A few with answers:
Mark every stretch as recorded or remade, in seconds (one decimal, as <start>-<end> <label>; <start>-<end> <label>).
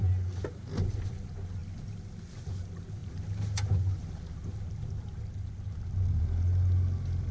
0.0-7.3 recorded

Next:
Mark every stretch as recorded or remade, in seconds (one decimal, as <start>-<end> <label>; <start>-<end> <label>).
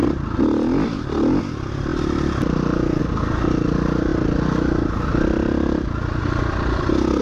0.0-7.2 recorded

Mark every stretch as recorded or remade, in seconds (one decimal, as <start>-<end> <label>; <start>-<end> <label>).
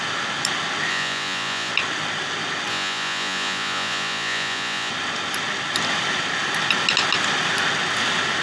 0.0-0.9 recorded; 0.9-1.7 remade; 1.7-2.7 recorded; 2.7-4.9 remade; 4.9-8.4 recorded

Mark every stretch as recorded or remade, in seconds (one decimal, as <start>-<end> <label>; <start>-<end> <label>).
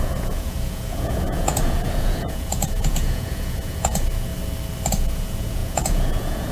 0.0-4.3 remade; 4.3-4.9 recorded; 4.9-6.5 remade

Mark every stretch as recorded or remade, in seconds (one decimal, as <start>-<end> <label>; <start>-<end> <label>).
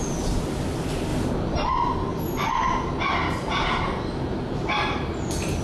0.0-5.6 recorded